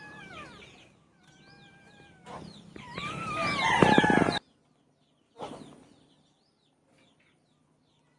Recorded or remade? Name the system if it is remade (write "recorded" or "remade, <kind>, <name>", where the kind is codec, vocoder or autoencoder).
recorded